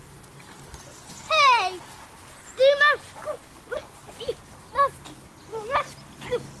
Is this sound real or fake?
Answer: real